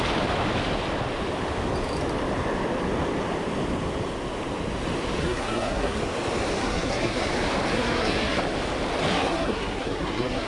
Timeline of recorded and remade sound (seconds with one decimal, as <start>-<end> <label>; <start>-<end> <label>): 0.0-5.2 recorded; 5.2-6.0 remade; 6.0-6.6 recorded; 6.6-7.3 remade; 7.3-7.7 recorded; 7.7-8.4 remade; 8.4-9.1 recorded; 9.1-10.5 remade